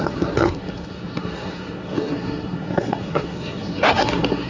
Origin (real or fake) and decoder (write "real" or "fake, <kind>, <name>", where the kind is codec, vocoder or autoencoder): fake, codec, SNAC